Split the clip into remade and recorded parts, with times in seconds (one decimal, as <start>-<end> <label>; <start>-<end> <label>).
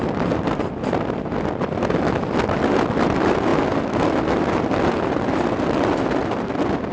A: 0.0-6.9 recorded